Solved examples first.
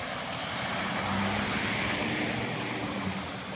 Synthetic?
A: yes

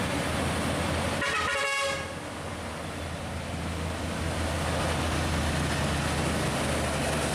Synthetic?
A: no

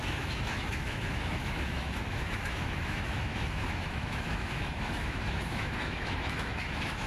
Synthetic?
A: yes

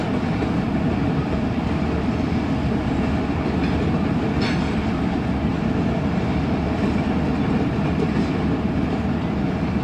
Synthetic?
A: no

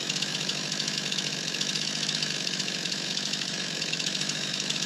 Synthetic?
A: yes